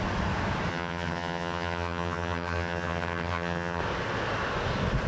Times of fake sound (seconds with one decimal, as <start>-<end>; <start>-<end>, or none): 0.7-3.8